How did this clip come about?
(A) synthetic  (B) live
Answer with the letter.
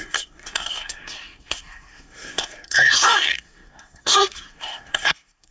A